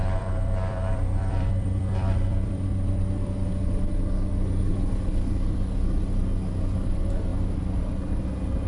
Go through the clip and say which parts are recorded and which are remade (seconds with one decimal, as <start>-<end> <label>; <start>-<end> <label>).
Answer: 0.0-3.5 remade; 3.5-8.7 recorded